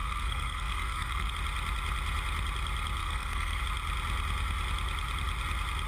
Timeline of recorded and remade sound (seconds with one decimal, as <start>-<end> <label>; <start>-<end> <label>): 0.0-1.3 remade; 1.3-3.0 recorded; 3.0-3.6 remade; 3.6-5.9 recorded